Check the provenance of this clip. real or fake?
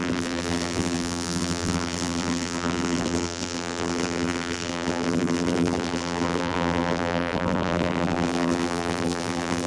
fake